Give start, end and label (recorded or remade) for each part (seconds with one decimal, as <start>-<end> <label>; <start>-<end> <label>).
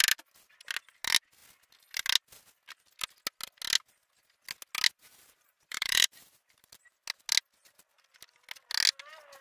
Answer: 0.0-5.0 recorded; 5.0-6.7 remade; 6.7-9.4 recorded